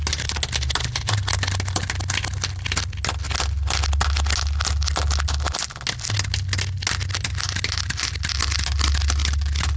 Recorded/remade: recorded